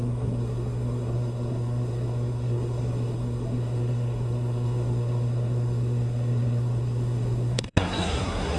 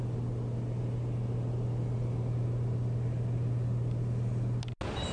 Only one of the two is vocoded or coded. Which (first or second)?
first